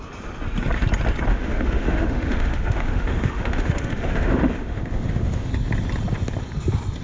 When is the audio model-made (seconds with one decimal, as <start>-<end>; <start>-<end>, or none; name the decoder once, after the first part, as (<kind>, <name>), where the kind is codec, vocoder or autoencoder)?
1.3-5.5 (autoencoder, DAC-VAE)